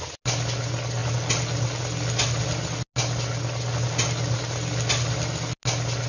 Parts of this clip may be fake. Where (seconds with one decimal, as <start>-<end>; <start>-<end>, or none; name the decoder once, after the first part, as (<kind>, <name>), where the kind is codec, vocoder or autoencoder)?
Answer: none